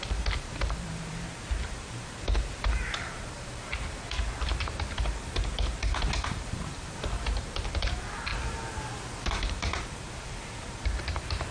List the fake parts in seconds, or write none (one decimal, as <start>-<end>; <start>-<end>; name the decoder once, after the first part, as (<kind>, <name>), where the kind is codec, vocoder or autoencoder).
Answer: 0.0-8.3 (vocoder, BigVGAN v2); 9.3-11.5